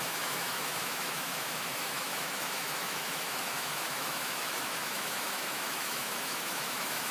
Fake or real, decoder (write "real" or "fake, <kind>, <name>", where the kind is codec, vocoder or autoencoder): fake, autoencoder, DAC-VAE